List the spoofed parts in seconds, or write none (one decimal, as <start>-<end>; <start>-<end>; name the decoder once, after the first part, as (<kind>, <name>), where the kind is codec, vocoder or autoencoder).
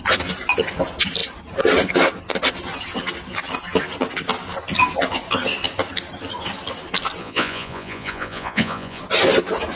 7.2-9.0 (vocoder, Vocos)